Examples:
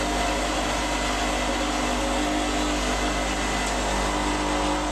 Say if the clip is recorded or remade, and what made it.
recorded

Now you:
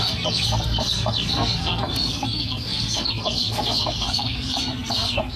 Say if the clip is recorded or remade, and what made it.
remade, codec, SNAC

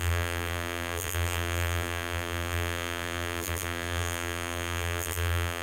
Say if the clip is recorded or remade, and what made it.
remade, vocoder, BigVGAN v2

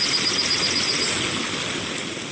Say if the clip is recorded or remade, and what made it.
recorded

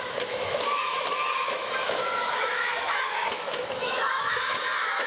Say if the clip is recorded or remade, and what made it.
remade, autoencoder, DAC-VAE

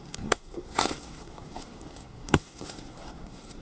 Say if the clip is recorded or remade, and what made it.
remade, codec, SNAC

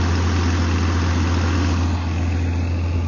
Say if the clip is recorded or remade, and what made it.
recorded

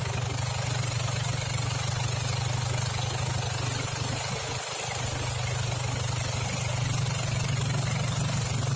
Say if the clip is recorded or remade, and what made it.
recorded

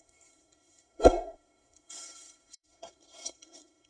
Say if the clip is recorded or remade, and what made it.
remade, codec, SNAC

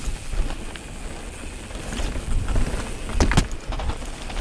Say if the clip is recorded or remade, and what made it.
recorded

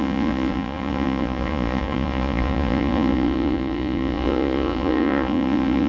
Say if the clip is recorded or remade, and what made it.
remade, vocoder, Vocos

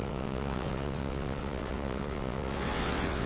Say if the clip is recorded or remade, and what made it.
remade, vocoder, WaveNeXt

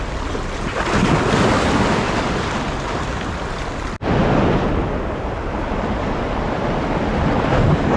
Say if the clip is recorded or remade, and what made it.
recorded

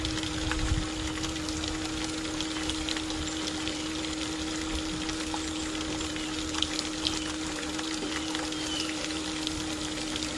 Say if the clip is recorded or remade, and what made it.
recorded